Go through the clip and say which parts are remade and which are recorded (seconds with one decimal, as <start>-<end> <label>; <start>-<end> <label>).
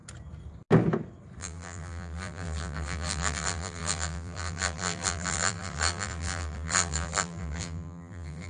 0.0-1.4 recorded; 1.4-8.5 remade